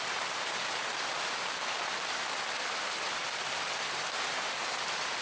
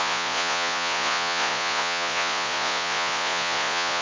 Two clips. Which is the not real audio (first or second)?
second